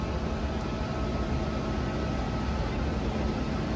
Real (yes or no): yes